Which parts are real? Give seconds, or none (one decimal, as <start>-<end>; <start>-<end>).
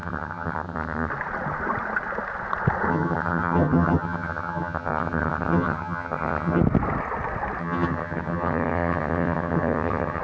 1.1-2.9; 6.6-7.6